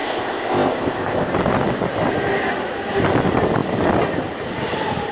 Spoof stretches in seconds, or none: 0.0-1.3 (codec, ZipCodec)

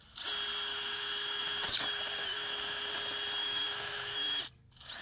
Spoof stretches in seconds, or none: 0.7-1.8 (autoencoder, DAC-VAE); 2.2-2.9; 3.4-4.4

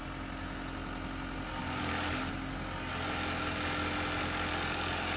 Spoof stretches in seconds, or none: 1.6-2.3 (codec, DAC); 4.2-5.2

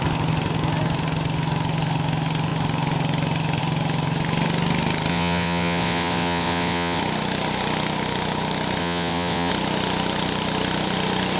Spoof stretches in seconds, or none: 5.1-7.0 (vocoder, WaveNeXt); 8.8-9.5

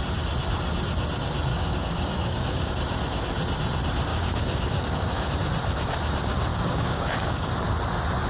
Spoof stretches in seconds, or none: 1.5-2.7 (codec, DAC); 4.1-5.3; 6.5-7.5

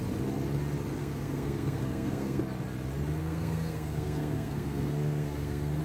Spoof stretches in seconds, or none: 1.0-2.4 (codec, SNAC); 3.2-5.8